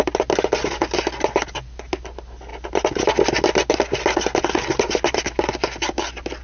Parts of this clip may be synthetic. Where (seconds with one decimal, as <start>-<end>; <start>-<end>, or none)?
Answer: none